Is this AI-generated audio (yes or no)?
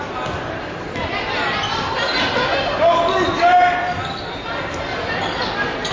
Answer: no